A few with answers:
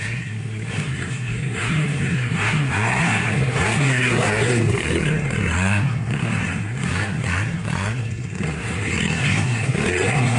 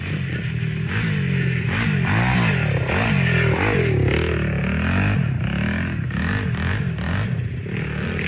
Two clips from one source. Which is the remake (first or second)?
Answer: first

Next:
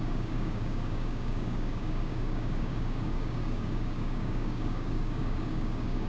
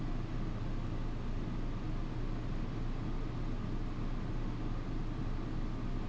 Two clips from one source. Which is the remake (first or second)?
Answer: first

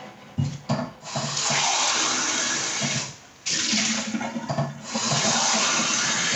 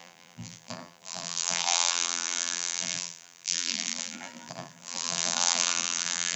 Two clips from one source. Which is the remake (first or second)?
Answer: second